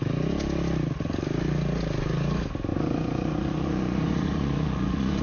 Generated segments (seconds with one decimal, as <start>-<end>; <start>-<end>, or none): 2.7-5.2